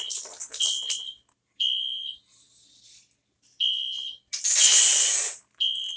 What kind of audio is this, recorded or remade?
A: recorded